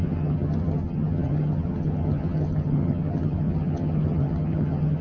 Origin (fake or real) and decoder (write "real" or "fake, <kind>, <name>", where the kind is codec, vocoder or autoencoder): fake, vocoder, HiFi-GAN